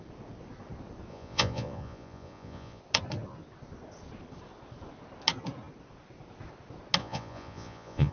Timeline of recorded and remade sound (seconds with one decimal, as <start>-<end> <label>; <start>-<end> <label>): 0.0-1.1 recorded; 1.1-2.8 remade; 2.8-7.0 recorded; 7.0-8.1 remade